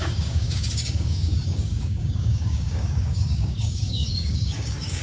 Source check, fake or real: fake